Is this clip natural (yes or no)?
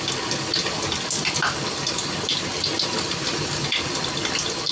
yes